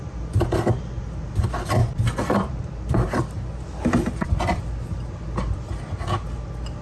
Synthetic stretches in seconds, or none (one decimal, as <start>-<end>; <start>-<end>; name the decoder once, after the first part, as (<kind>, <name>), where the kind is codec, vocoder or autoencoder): 1.8-4.6 (vocoder, BigVGAN v2)